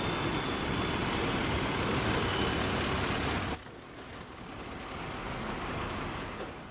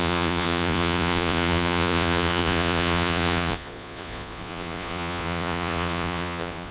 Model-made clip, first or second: second